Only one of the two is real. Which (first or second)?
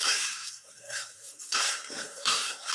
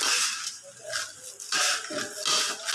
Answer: second